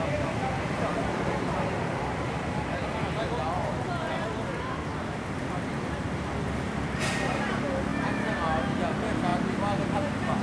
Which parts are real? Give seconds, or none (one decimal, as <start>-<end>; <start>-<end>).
0.0-10.4